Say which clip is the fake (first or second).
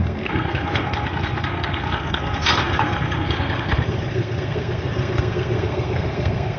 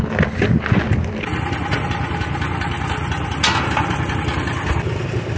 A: first